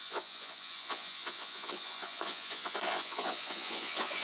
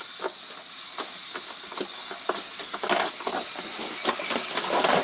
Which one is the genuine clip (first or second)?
second